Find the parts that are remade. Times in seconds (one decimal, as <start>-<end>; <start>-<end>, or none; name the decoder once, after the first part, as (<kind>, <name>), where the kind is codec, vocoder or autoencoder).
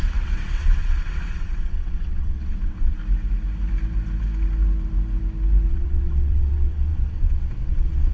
0.0-3.0 (vocoder, WaveNeXt); 5.7-8.1